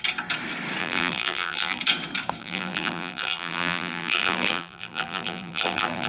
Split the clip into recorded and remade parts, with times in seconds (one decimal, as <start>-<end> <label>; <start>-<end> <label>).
0.0-0.8 recorded; 0.8-1.8 remade; 1.8-2.4 recorded; 2.4-6.1 remade

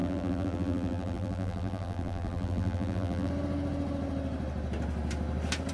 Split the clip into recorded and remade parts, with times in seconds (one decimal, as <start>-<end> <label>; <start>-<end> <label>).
0.0-3.3 remade; 3.3-5.7 recorded

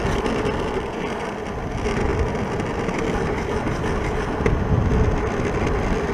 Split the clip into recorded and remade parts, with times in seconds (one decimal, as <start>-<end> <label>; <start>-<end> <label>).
0.0-6.1 recorded

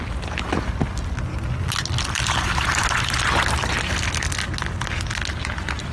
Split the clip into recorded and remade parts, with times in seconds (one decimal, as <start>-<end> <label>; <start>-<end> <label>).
0.0-5.9 recorded

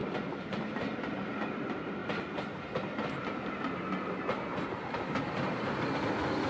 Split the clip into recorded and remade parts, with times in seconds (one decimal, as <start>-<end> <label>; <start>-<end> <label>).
0.0-0.9 remade; 0.9-6.5 recorded

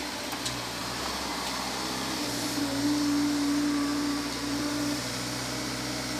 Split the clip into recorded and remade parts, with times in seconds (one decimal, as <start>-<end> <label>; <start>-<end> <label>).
0.0-0.8 recorded; 0.8-2.6 remade; 2.6-3.9 recorded; 3.9-5.1 remade; 5.1-6.2 recorded

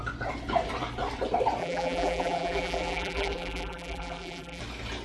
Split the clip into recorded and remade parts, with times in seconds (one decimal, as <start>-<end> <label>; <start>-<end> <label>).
0.0-1.6 recorded; 1.6-4.6 remade; 4.6-5.0 recorded

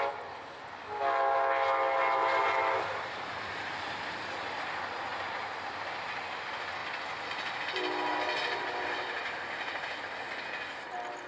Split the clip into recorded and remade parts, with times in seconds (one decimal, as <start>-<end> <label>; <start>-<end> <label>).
0.0-2.2 recorded; 2.2-4.0 remade; 4.0-5.1 recorded; 5.1-6.0 remade; 6.0-11.3 recorded